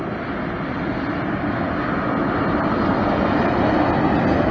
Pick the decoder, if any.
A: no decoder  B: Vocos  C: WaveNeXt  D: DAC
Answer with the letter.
A